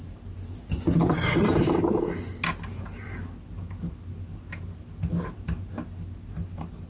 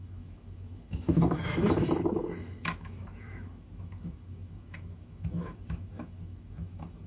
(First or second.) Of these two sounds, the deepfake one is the second